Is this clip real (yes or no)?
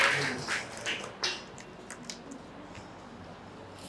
yes